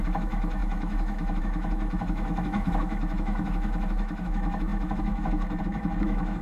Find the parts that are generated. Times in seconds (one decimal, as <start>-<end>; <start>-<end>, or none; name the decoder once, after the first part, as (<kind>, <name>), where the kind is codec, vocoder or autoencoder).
0.0-6.4 (autoencoder, DAC-VAE)